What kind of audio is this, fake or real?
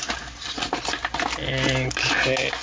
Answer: real